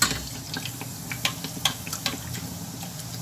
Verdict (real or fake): real